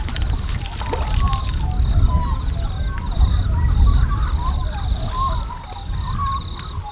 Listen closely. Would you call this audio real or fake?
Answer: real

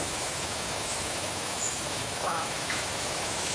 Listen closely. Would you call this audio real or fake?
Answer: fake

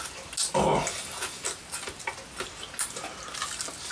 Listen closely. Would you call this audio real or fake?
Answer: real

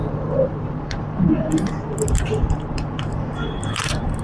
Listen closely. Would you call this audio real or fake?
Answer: fake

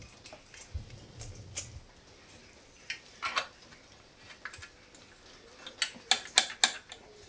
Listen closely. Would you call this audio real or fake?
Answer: real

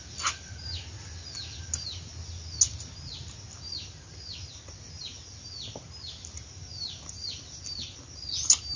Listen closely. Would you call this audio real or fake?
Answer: real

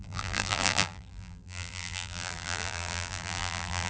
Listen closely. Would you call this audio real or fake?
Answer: fake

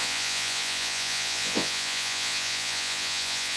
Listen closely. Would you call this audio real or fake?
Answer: fake